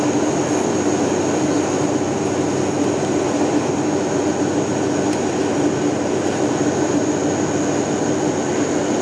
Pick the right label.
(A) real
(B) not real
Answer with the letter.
A